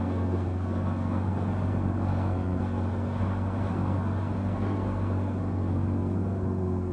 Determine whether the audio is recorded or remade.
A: remade